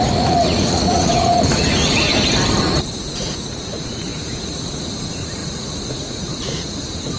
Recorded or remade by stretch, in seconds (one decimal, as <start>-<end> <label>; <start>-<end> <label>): 0.0-2.1 remade; 2.1-2.6 recorded; 2.6-7.2 remade